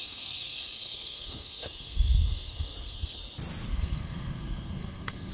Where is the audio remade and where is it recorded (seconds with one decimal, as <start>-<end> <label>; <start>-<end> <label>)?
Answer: 0.0-3.2 remade; 3.2-3.7 recorded; 3.7-5.3 remade